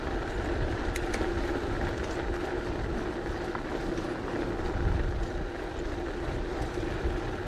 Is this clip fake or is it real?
real